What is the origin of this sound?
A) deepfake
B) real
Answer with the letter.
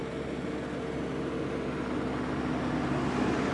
B